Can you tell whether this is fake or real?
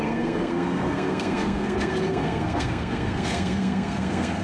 fake